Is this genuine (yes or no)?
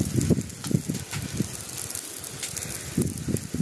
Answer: yes